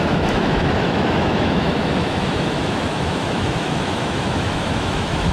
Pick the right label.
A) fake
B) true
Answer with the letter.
A